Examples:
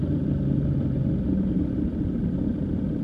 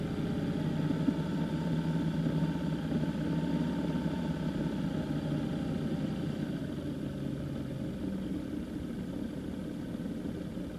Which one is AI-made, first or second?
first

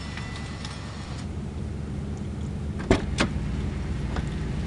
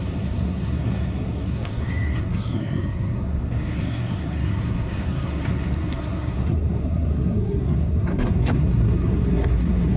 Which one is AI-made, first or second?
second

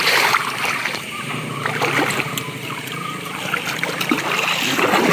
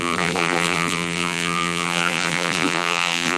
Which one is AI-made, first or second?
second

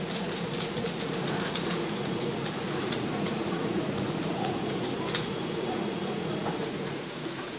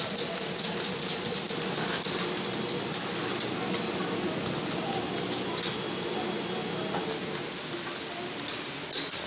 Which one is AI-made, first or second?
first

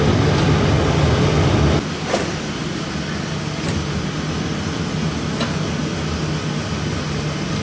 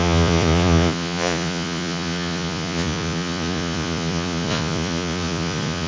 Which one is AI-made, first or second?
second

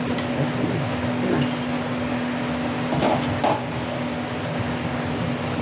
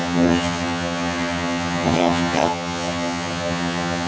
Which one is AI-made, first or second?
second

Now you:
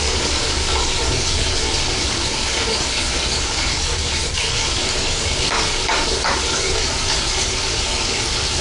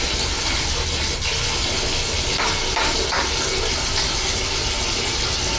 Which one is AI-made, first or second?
first